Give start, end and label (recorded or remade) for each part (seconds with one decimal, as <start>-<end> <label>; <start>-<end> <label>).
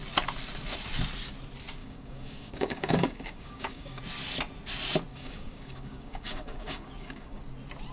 0.0-1.8 recorded; 1.8-4.0 remade; 4.0-5.1 recorded; 5.1-7.4 remade; 7.4-7.9 recorded